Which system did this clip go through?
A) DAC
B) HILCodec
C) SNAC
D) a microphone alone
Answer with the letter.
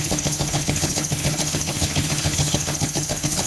B